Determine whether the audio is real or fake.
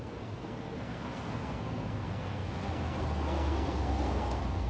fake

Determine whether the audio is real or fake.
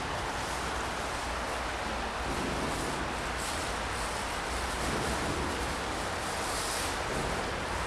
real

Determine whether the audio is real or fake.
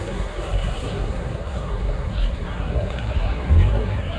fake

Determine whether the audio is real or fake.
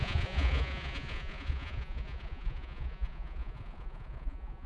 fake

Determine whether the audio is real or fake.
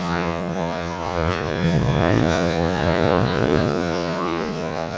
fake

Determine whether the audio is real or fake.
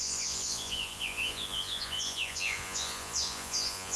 fake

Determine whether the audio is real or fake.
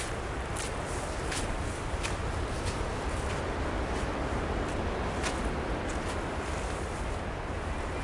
real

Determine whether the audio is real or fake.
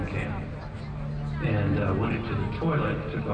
real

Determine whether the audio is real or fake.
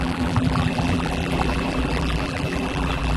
fake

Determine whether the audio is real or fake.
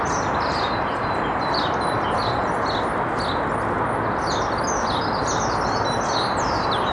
real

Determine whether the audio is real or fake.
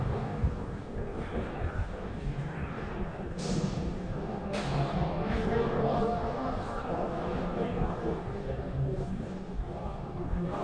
fake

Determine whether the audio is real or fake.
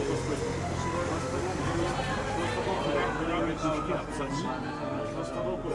real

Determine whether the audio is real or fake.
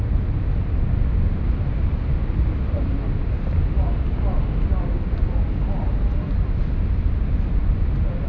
real